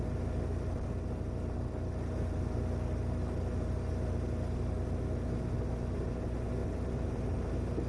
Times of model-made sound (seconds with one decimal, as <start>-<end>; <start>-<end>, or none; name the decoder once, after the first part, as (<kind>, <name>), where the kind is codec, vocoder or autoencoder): 6.6-7.5 (vocoder, BigVGAN v2)